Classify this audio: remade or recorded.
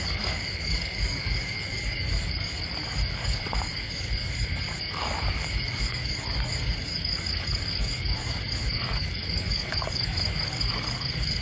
remade